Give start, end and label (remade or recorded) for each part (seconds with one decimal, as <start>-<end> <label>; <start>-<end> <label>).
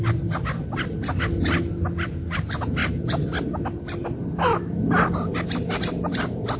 0.0-6.6 recorded